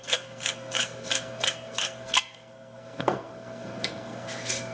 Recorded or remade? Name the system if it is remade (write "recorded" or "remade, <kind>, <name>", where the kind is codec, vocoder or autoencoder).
remade, codec, SNAC